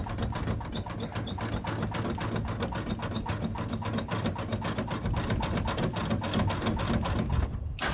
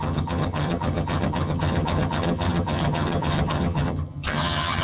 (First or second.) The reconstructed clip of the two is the second